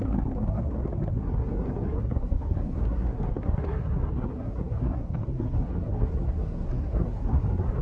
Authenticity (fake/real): fake